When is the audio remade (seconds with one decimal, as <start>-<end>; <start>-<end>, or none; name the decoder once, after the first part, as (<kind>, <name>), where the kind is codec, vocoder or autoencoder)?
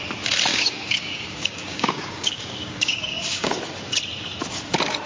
0.5-3.6 (codec, DAC)